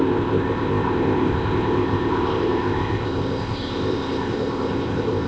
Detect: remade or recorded remade